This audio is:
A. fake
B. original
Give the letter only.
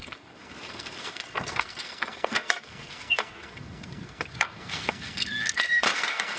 A